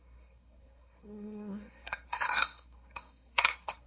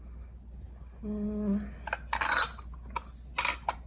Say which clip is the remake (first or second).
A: first